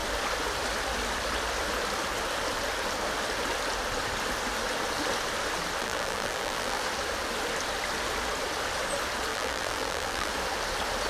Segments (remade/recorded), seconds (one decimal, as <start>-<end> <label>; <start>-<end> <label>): 0.0-5.8 recorded; 5.8-6.8 remade; 6.8-9.3 recorded; 9.3-10.3 remade; 10.3-11.1 recorded